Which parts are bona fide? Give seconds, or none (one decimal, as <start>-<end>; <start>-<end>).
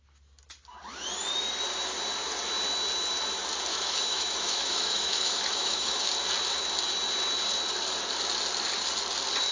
0.0-3.7; 6.1-9.5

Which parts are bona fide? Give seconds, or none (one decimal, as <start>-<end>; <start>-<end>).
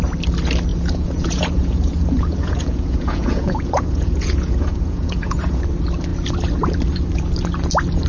0.0-0.7; 5.6-8.1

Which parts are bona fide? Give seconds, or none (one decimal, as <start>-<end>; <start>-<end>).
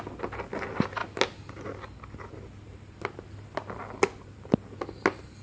0.0-5.4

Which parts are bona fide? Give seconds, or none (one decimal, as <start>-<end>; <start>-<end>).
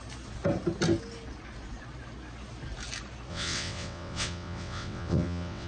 0.0-3.3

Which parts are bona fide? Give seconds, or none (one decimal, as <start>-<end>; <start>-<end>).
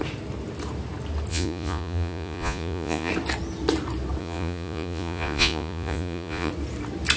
0.0-1.3; 3.1-4.2; 6.5-7.2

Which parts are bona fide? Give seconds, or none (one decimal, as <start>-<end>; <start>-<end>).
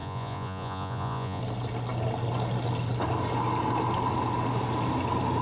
1.4-5.4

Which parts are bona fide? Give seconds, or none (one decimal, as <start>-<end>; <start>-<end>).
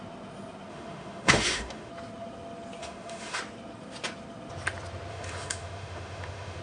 0.0-0.7; 1.9-2.8; 3.4-5.1